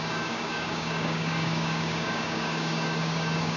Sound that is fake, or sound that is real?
fake